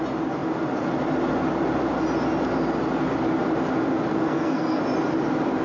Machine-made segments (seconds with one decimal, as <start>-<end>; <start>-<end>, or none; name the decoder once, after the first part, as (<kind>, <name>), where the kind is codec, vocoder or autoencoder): 4.1-4.8 (codec, SNAC)

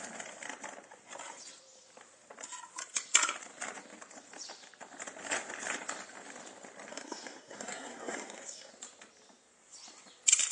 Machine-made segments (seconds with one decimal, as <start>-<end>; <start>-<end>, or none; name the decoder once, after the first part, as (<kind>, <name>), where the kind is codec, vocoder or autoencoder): 6.9-8.7 (codec, SNAC)

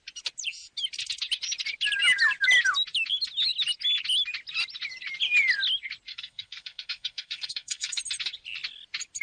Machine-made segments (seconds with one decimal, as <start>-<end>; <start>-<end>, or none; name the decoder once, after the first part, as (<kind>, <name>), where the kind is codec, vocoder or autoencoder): 6.1-8.0 (codec, SNAC)

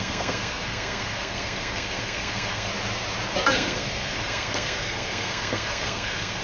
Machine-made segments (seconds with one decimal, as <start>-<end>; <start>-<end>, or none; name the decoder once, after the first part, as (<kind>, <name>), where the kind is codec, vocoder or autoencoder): 0.0-2.7 (codec, SNAC); 3.5-6.4